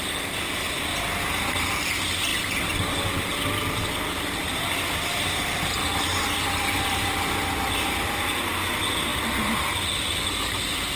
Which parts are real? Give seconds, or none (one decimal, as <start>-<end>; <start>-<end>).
0.0-11.0